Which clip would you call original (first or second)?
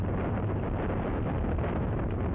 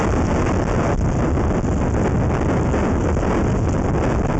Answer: second